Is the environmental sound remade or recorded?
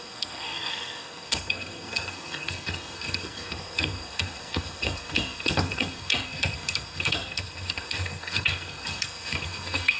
remade